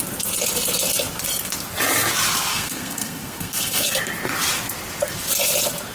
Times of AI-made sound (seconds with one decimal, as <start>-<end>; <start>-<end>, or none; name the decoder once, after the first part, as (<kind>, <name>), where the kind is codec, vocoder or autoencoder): 2.5-3.9 (codec, SNAC)

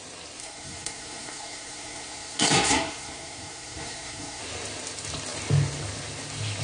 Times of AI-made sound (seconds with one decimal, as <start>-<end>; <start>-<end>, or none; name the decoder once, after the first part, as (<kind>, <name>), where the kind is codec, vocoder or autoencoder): 0.4-4.4 (codec, SNAC)

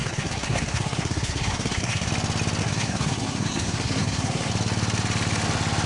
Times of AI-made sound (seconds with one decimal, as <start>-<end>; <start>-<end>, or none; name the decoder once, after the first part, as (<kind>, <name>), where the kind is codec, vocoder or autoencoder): 0.0-2.1 (codec, SNAC); 2.6-4.5

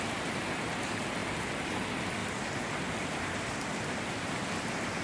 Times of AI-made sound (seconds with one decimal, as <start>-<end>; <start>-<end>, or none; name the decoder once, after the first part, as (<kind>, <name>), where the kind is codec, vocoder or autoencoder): none

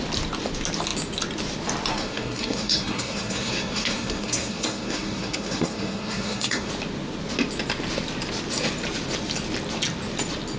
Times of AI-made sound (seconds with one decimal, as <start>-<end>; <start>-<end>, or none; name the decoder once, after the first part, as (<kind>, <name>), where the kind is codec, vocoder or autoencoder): 1.9-6.7 (codec, SNAC)

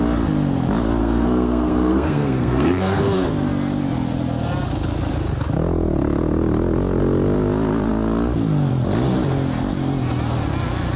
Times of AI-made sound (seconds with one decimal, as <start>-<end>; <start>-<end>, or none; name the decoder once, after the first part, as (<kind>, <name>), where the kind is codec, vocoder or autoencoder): 1.0-3.0 (codec, SNAC)

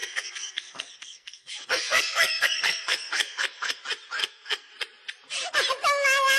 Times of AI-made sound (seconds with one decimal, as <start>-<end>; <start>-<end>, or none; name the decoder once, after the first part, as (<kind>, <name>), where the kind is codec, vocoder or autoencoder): 0.0-3.8 (codec, SNAC); 4.2-4.7